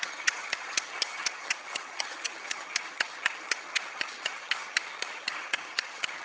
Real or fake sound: fake